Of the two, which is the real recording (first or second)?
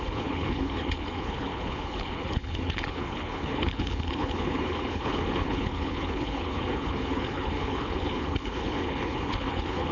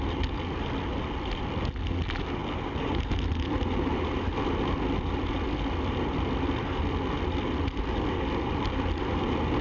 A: second